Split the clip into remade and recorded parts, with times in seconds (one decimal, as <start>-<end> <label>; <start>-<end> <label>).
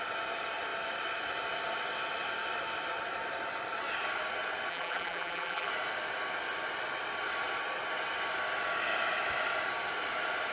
0.0-4.7 recorded; 4.7-5.7 remade; 5.7-10.5 recorded